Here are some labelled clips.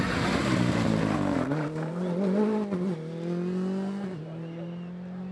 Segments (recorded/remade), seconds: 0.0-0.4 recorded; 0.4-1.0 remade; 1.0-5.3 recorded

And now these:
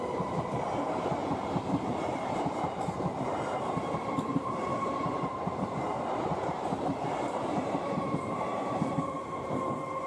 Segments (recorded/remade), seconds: 0.0-10.1 remade

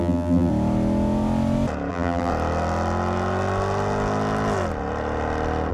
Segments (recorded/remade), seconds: 0.0-0.5 remade; 0.5-1.9 recorded; 1.9-2.3 remade; 2.3-5.7 recorded

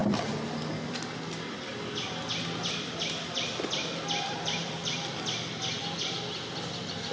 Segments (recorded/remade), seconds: 0.0-4.3 recorded; 4.3-4.8 remade; 4.8-6.6 recorded; 6.6-7.1 remade

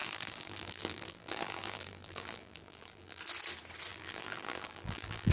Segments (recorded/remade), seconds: 0.0-3.2 remade; 3.2-3.9 recorded; 3.9-5.3 remade

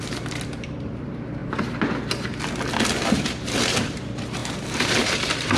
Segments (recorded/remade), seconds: 0.0-1.4 remade; 1.4-3.0 recorded; 3.0-5.6 remade

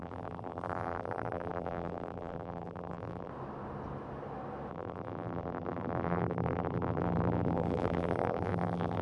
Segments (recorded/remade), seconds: 0.0-3.3 remade; 3.3-4.7 recorded; 4.7-9.0 remade